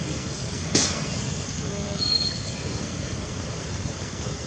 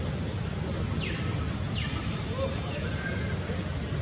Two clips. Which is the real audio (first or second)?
second